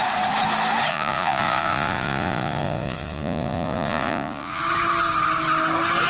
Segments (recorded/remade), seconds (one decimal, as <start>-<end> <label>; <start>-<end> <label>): 0.0-0.9 recorded; 0.9-4.6 remade; 4.6-6.1 recorded